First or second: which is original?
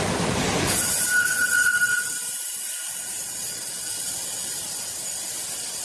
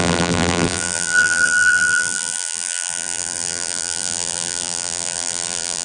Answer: first